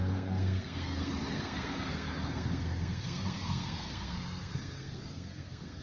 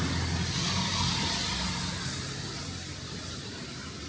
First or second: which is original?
second